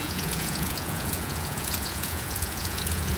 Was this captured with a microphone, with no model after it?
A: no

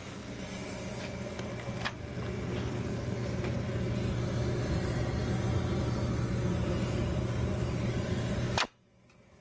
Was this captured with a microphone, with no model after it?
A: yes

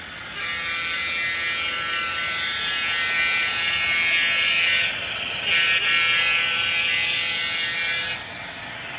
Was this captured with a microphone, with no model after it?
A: yes